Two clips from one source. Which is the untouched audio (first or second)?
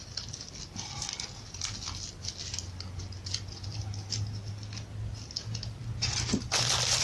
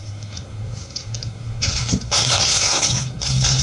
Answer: first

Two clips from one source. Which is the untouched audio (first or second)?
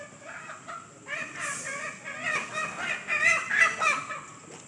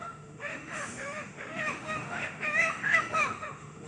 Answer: first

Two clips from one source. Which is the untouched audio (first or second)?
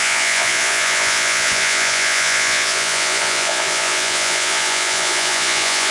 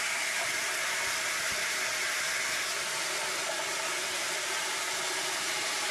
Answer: second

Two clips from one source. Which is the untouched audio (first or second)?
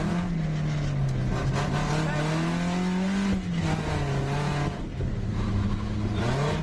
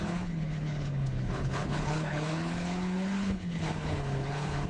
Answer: first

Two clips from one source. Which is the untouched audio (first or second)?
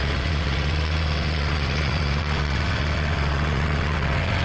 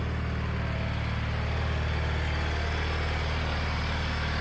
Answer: second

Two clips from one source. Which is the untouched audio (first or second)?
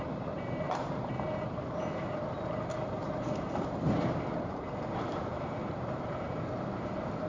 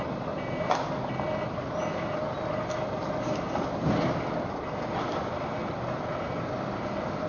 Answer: second